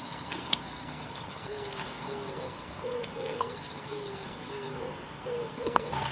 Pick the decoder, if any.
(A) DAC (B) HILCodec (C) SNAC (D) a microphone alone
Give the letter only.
C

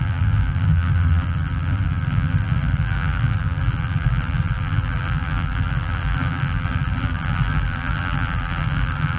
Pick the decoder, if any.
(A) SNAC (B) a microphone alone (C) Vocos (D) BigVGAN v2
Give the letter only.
D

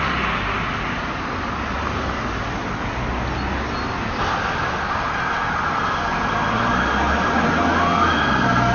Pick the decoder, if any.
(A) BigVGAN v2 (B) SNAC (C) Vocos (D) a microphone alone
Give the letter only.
D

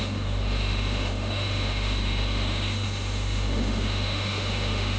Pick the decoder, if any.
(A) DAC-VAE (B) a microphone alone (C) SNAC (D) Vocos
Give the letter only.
A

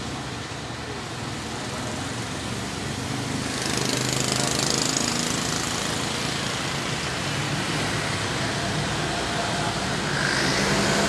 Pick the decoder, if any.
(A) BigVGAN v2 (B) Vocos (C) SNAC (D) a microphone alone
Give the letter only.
D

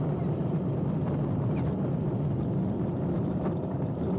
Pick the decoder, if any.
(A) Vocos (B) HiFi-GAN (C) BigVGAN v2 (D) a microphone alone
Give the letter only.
C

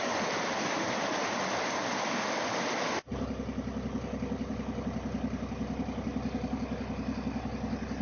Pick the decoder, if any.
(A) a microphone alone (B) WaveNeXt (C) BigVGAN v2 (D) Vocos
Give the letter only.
A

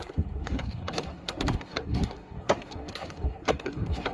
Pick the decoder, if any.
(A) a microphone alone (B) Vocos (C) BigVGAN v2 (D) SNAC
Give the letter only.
D